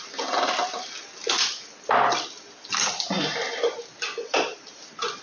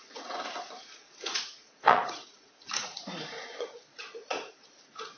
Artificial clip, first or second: second